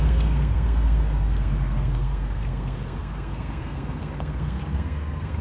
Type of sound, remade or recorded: remade